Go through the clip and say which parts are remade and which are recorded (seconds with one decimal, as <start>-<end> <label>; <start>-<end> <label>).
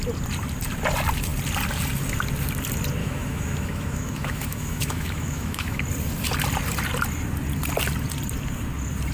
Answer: 0.0-3.0 recorded; 3.0-5.8 remade; 5.8-9.1 recorded